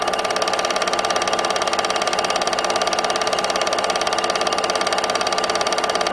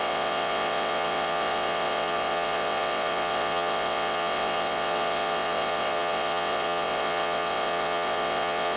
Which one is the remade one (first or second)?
second